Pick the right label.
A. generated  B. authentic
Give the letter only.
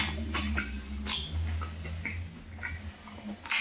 B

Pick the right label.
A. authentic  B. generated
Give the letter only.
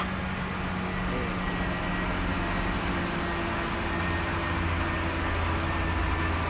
A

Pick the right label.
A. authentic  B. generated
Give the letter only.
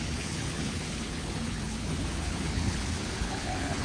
B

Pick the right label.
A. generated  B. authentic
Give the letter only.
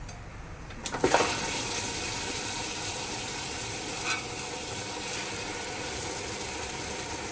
B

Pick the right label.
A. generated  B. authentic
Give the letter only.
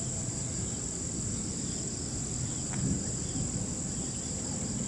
B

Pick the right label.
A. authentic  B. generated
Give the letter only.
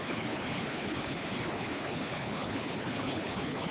B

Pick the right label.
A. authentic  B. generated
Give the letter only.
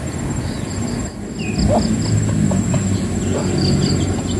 A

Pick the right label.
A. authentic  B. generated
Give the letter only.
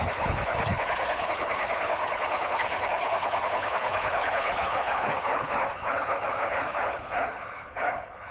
B